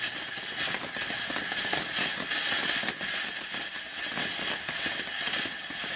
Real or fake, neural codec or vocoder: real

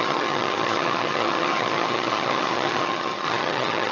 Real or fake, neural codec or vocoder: fake, vocoder, HiFi-GAN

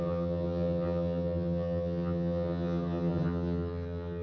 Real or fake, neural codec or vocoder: fake, vocoder, HiFi-GAN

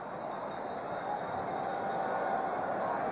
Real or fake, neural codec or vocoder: real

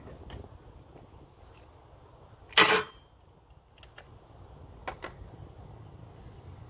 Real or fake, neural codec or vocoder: real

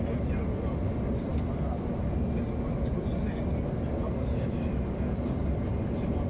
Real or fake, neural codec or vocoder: real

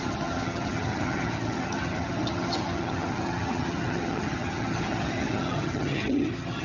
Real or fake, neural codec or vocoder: fake, vocoder, HiFi-GAN